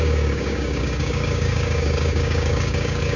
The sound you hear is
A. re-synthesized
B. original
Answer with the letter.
A